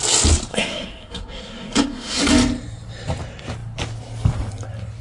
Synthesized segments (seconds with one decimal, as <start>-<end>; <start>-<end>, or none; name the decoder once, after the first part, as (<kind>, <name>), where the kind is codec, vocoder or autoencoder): 0.5-2.2 (codec, SNAC)